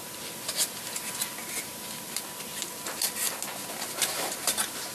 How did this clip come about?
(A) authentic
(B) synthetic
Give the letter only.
A